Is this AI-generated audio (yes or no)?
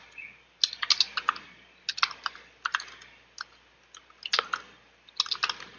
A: no